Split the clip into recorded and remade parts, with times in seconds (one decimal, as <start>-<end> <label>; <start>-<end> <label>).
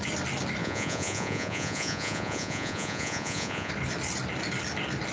0.0-0.6 recorded; 0.6-3.7 remade; 3.7-5.1 recorded